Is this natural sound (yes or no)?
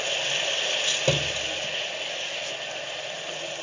yes